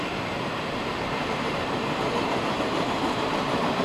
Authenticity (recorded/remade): remade